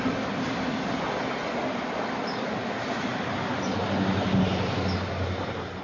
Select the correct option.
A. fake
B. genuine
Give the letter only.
B